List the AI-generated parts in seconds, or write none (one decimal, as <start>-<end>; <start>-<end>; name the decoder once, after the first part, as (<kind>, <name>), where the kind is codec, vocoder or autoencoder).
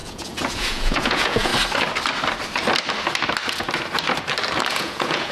0.0-1.5 (vocoder, Vocos); 4.7-5.3